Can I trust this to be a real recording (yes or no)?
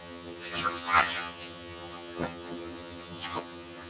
no